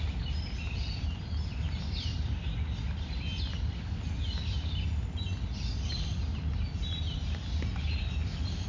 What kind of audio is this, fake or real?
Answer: real